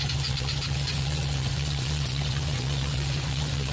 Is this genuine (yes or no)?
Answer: no